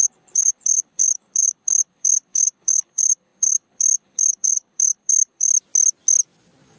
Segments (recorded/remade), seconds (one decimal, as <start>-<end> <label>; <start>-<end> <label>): 0.0-5.5 remade; 5.5-6.8 recorded